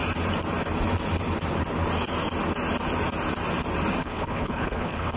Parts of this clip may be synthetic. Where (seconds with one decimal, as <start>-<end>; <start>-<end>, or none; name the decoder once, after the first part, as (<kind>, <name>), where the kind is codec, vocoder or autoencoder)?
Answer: 4.0-5.2 (codec, HILCodec)